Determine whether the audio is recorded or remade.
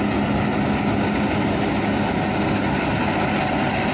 recorded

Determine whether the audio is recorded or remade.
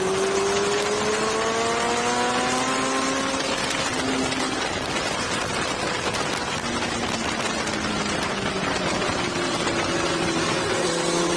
recorded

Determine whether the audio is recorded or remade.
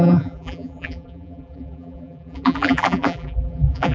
remade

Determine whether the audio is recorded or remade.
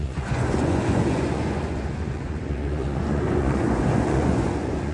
remade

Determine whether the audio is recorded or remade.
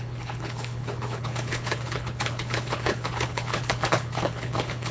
remade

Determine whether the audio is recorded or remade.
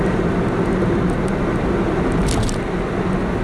recorded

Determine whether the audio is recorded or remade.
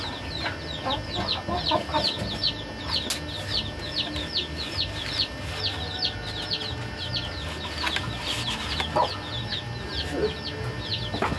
recorded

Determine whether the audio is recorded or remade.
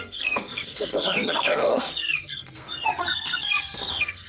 remade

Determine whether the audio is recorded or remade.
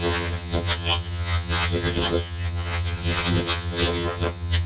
remade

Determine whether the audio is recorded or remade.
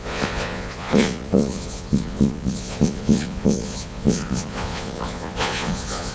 remade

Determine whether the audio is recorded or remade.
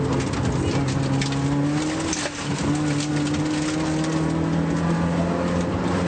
recorded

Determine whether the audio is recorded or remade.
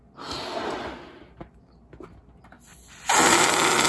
recorded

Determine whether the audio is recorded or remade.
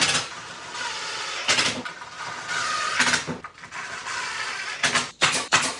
recorded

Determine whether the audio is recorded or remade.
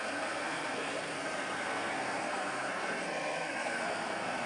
remade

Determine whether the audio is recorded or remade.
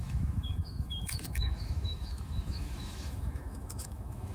remade